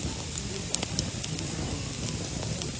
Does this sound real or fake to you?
real